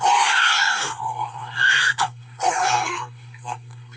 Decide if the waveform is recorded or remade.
remade